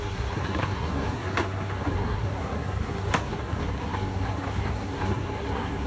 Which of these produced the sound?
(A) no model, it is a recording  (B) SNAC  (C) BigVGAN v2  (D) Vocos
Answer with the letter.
B